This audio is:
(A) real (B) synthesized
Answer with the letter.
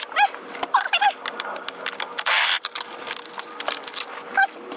A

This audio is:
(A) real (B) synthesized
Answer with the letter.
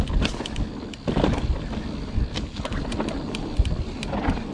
A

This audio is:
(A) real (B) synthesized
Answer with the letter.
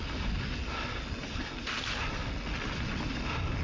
A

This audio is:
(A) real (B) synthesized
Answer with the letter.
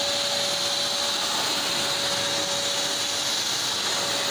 A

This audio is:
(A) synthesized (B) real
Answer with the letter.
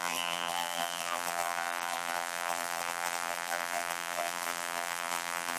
A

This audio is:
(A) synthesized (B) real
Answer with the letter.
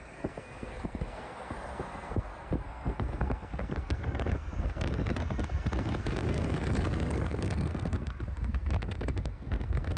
A